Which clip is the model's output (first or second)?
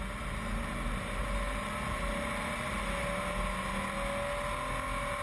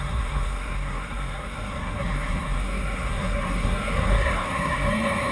second